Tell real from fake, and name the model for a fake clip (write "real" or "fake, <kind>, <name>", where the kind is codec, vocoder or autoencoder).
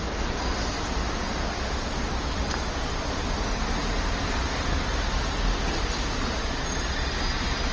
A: real